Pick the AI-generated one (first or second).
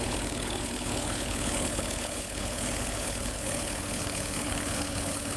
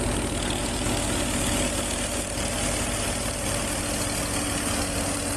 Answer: first